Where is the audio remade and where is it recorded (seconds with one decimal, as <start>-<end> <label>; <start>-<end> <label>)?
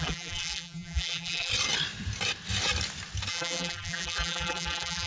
0.0-1.5 remade; 1.5-3.3 recorded; 3.3-5.1 remade